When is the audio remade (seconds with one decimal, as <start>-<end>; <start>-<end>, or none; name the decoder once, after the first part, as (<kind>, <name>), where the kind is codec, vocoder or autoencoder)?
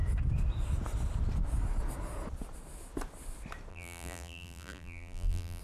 3.7-5.6 (vocoder, BigVGAN v2)